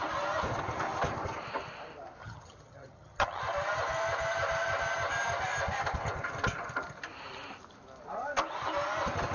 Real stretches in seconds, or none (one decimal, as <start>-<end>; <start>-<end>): 0.0-2.2; 3.4-9.3